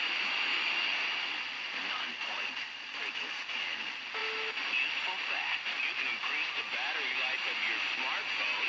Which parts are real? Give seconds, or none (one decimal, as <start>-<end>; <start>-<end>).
0.0-8.7